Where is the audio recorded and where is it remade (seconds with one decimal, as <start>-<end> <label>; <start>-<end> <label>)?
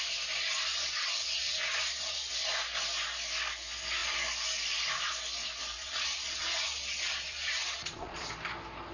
0.0-0.7 recorded; 0.7-2.3 remade; 2.3-5.8 recorded; 5.8-8.2 remade; 8.2-8.9 recorded